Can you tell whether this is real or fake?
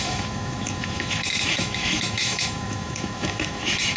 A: fake